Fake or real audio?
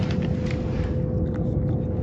real